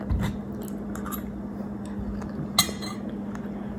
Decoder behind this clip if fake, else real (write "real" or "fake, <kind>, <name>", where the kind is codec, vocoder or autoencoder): real